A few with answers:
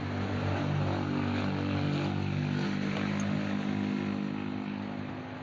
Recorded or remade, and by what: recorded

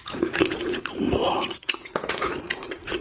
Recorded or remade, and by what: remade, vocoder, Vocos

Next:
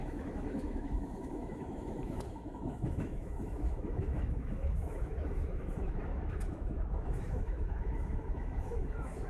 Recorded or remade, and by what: remade, autoencoder, DAC-VAE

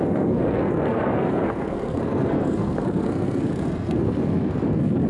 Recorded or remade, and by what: remade, codec, SNAC